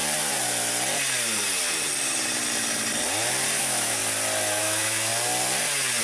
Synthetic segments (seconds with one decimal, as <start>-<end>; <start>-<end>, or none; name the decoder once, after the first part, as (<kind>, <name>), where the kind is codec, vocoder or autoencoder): 3.6-4.0 (autoencoder, DAC-VAE); 4.6-5.1